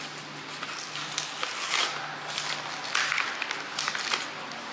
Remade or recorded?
recorded